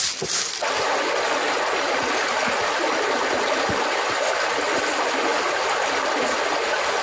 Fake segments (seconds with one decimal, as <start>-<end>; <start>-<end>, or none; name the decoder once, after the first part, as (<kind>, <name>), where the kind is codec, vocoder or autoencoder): none